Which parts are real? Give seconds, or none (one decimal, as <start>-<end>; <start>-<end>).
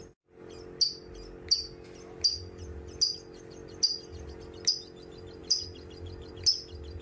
0.0-5.4; 6.3-7.0